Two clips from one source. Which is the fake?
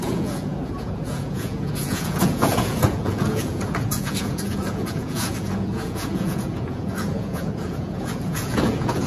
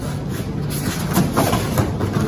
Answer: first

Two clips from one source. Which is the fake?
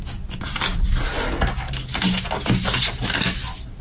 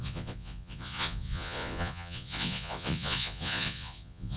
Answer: second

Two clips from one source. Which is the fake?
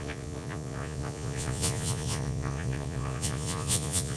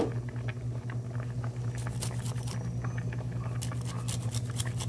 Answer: first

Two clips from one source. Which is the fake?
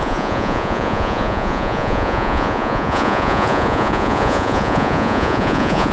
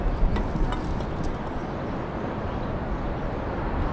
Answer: first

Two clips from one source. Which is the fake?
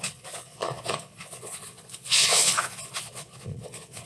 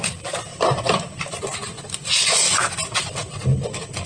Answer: first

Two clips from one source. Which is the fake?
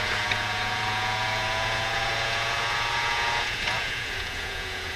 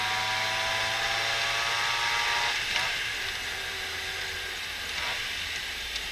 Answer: first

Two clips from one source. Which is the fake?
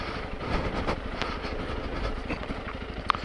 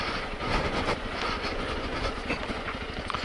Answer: second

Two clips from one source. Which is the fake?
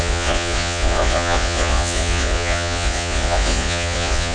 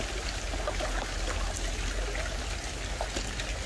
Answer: first